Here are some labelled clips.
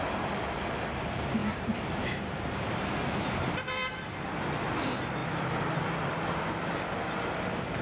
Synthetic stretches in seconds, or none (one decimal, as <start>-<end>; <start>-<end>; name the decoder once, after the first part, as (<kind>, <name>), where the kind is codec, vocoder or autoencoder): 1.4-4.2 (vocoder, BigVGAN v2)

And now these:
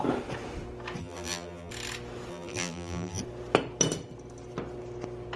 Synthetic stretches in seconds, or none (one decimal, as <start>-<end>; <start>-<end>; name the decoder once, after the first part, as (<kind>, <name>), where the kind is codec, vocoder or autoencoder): 1.0-1.7 (vocoder, BigVGAN v2); 2.3-3.2

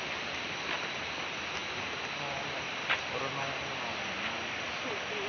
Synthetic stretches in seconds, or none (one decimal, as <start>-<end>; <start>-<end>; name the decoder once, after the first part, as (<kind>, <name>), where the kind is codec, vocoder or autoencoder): none

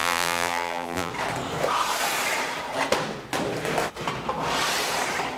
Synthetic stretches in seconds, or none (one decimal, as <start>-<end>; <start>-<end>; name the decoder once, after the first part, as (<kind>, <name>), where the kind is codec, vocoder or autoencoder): 0.0-1.1 (vocoder, BigVGAN v2)

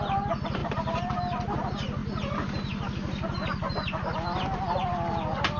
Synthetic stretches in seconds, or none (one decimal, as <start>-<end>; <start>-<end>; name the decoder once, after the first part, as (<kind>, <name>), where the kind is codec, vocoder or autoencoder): 0.6-1.2 (vocoder, BigVGAN v2)

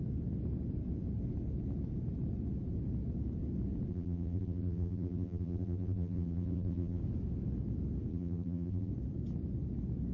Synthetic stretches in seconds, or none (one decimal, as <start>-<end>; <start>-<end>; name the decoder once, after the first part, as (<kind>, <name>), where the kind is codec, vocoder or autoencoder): 3.9-7.0 (vocoder, BigVGAN v2); 8.1-8.9

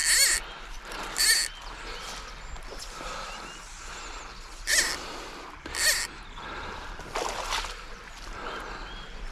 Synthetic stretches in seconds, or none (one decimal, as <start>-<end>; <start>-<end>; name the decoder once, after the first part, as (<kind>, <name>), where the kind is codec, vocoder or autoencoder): none

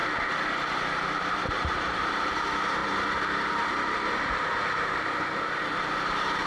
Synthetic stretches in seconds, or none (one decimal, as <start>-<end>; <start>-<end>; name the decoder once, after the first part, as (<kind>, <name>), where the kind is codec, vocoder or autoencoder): 1.5-2.8 (vocoder, BigVGAN v2); 3.5-6.5